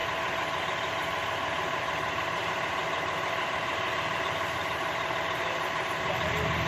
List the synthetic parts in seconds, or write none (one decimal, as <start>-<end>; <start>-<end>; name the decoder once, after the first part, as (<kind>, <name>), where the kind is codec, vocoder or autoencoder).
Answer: 4.0-6.7 (vocoder, BigVGAN v2)